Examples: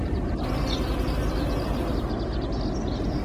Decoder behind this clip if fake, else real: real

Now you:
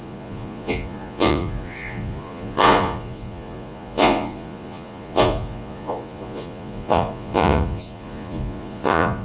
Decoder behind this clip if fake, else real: fake, vocoder, Vocos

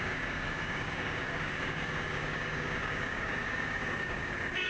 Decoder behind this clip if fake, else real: fake, codec, DAC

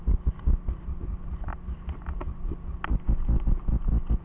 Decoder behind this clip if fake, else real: real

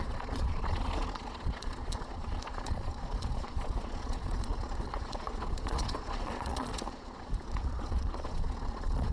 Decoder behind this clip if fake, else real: fake, vocoder, Vocos